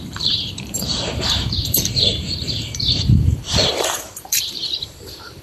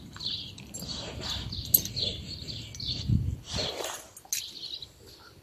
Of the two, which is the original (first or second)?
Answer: second